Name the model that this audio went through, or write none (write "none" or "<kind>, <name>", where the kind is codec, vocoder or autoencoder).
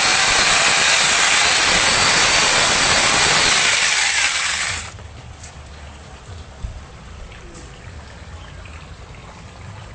vocoder, BigVGAN v2